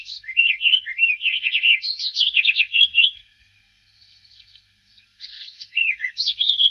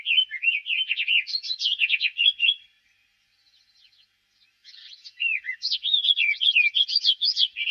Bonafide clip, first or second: second